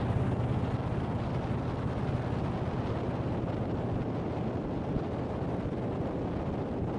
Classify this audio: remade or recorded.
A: recorded